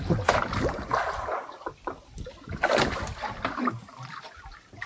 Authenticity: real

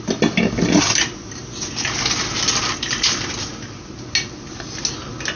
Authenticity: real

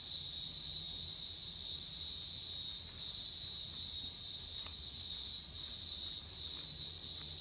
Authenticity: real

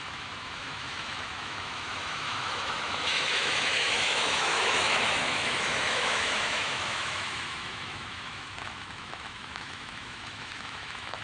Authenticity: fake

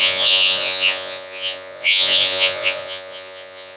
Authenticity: fake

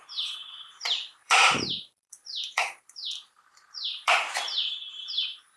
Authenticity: fake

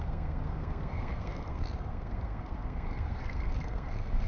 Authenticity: fake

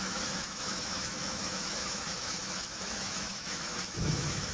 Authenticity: fake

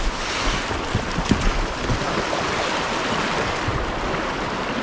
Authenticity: real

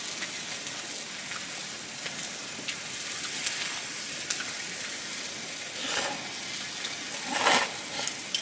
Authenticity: real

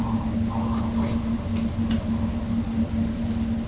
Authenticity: real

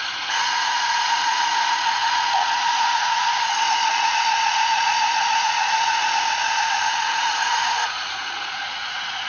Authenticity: fake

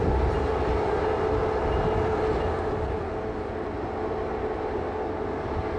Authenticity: real